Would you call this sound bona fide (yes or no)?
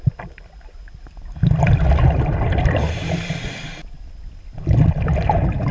yes